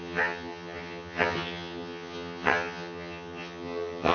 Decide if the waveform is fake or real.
fake